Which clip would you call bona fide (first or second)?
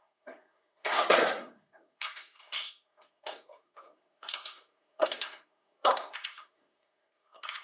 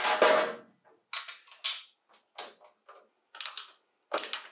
second